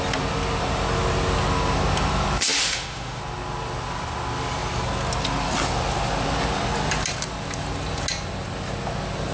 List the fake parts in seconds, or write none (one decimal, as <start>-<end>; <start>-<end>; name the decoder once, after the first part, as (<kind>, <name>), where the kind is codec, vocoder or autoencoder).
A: 2.6-3.2 (autoencoder, DAC-VAE)